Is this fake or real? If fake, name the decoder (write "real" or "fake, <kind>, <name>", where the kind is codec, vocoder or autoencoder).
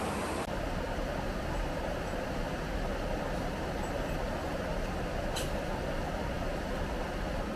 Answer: real